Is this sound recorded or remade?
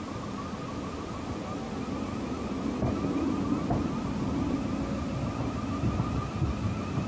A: recorded